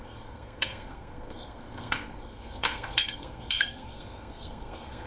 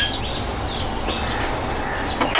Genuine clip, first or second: second